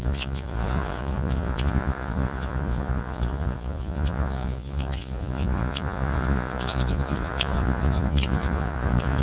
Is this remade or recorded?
remade